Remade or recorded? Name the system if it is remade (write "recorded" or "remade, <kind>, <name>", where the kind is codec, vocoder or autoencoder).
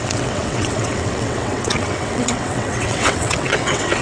remade, vocoder, WaveNeXt